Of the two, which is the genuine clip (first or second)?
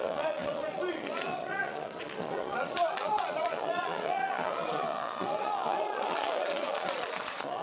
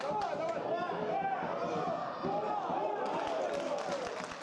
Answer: second